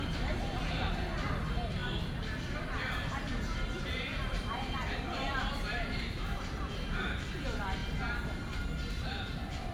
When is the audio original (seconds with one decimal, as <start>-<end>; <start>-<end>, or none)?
1.8-2.4; 7.8-8.9